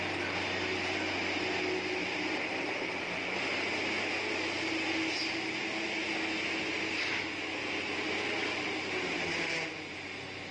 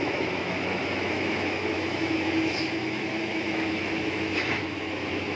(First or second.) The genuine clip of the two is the first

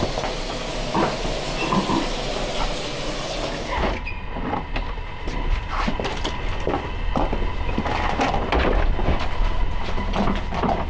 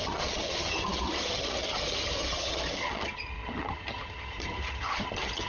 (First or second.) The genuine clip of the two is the first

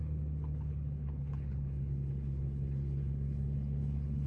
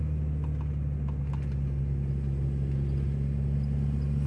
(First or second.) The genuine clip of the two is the second